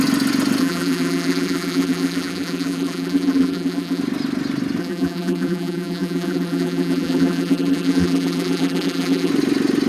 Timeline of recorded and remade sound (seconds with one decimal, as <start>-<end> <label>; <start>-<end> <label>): 0.0-0.6 recorded; 0.6-4.0 remade; 4.0-4.8 recorded; 4.8-9.3 remade; 9.3-9.9 recorded